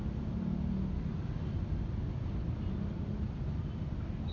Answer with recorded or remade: recorded